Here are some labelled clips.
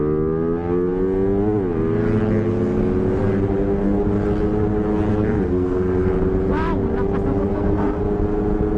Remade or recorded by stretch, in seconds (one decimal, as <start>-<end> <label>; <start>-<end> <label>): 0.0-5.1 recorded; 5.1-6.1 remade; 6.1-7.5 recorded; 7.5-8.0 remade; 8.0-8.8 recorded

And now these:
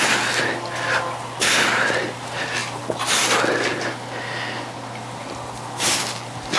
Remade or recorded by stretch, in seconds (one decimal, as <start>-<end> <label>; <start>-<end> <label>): 0.0-6.6 recorded

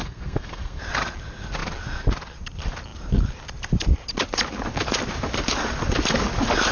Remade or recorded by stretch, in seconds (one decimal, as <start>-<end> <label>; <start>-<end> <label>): 0.0-0.8 remade; 0.8-6.7 recorded